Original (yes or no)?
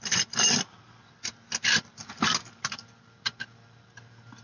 no